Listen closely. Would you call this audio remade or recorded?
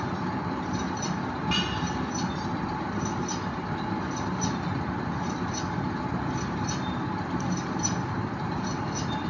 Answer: recorded